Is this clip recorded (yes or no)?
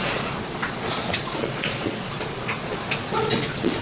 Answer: no